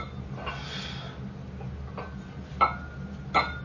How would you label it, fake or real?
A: real